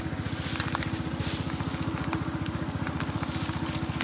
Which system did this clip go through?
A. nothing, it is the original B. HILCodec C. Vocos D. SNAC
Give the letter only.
A